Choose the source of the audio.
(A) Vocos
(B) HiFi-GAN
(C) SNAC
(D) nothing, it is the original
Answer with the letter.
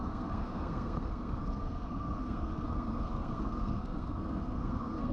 C